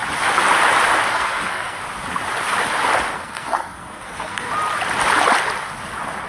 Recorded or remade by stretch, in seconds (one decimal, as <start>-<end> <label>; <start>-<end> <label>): 0.0-1.1 recorded; 1.1-1.8 remade; 1.8-3.1 recorded; 3.1-4.5 remade; 4.5-6.3 recorded